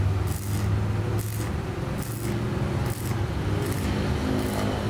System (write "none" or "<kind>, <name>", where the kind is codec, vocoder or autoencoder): none